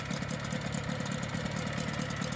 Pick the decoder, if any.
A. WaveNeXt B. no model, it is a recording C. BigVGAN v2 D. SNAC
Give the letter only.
B